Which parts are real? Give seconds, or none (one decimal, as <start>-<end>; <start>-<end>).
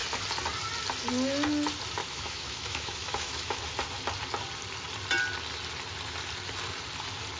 0.0-2.0; 3.6-7.4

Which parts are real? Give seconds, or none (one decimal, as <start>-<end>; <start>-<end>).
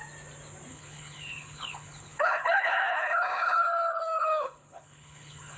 0.0-0.7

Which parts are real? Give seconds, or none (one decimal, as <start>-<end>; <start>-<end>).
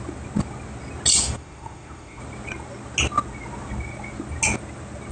0.0-1.2; 2.2-5.1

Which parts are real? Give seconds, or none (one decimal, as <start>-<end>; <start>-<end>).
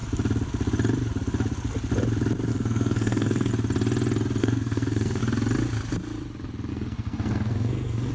0.0-2.5; 3.5-4.4; 5.2-6.7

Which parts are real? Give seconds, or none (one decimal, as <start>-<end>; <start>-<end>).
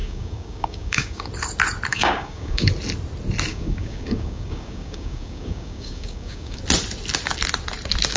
1.3-1.9; 2.7-3.5; 6.6-8.2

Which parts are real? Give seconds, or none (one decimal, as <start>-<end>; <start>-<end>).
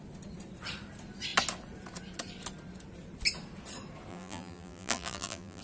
0.0-4.1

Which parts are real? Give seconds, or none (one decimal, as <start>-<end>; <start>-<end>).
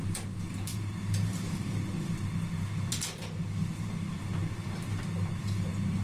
0.0-0.7; 1.8-6.0